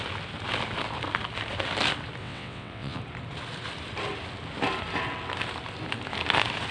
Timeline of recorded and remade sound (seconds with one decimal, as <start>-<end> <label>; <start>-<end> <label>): 0.0-2.2 recorded; 2.2-3.0 remade; 3.0-6.7 recorded